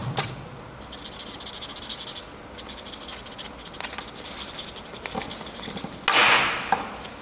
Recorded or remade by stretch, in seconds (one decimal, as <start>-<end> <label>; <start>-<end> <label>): 0.0-7.2 recorded

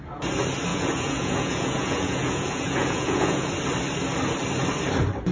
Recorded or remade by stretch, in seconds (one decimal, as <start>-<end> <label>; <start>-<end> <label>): 0.0-0.7 recorded; 0.7-3.5 remade; 3.5-5.3 recorded

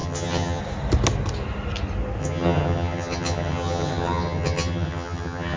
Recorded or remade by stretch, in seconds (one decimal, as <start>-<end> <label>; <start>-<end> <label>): 0.0-0.6 remade; 0.6-2.2 recorded; 2.2-5.6 remade

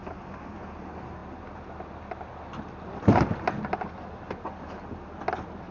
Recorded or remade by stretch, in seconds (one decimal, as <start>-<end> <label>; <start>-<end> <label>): 0.0-5.7 recorded

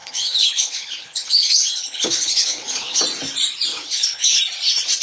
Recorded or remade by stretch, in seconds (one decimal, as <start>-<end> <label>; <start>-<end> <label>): 0.0-3.0 remade; 3.0-3.7 recorded; 3.7-4.4 remade; 4.4-5.0 recorded

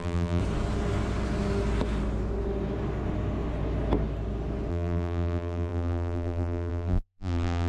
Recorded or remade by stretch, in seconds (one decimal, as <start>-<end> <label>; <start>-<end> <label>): 0.0-0.4 remade; 0.4-4.7 recorded; 4.7-7.7 remade

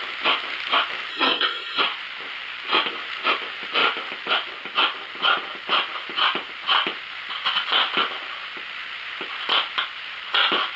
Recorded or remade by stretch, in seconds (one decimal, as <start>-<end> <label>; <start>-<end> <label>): 0.0-1.1 recorded; 1.1-1.8 remade; 1.8-10.8 recorded